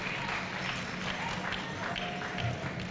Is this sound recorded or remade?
recorded